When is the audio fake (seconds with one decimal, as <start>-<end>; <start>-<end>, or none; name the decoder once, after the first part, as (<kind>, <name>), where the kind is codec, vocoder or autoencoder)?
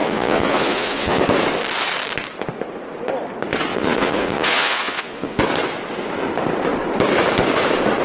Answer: 0.0-1.2 (vocoder, Vocos); 3.7-5.4